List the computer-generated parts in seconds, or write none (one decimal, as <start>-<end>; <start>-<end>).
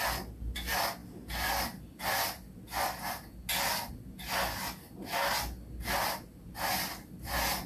none